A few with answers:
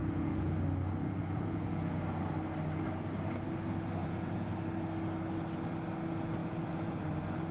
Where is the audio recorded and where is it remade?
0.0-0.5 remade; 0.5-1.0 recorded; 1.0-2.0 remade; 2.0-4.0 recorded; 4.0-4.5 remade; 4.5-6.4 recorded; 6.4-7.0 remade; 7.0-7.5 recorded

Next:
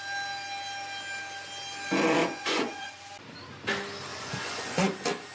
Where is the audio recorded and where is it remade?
0.0-2.2 recorded; 2.2-3.0 remade; 3.0-4.1 recorded; 4.1-4.8 remade; 4.8-5.3 recorded